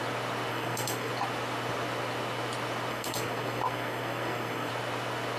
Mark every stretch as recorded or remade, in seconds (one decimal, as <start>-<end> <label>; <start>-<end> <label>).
0.0-0.5 recorded; 0.5-1.1 remade; 1.1-2.9 recorded; 2.9-4.7 remade; 4.7-5.4 recorded